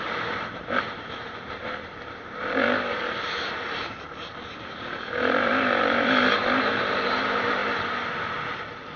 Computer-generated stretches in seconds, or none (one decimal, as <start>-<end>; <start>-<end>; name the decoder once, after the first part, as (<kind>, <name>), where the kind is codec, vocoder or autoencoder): 0.0-7.6 (vocoder, BigVGAN v2); 8.6-9.0